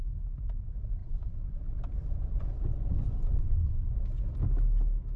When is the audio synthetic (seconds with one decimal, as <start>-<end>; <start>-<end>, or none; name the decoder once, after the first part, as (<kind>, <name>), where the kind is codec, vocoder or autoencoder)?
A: 1.0-1.6 (vocoder, Vocos); 2.0-3.8